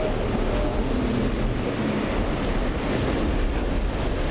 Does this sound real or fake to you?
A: real